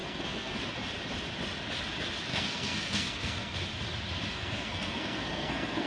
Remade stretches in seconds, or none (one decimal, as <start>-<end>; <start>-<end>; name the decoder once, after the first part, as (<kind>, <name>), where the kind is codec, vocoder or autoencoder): 0.0-0.6 (codec, SNAC); 2.3-3.6; 4.3-5.9